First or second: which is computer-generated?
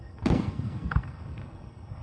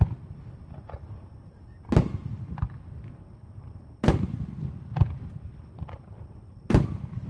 first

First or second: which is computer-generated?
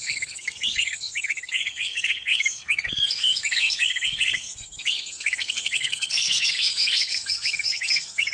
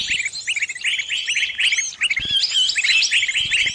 first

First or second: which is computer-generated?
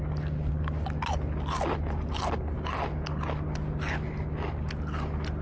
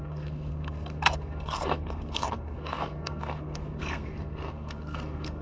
second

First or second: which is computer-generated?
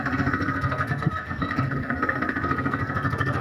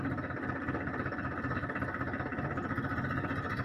first